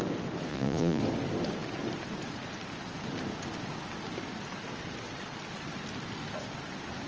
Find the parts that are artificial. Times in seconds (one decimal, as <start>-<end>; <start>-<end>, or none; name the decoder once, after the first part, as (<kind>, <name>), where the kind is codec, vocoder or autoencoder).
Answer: 0.5-1.0 (vocoder, Vocos)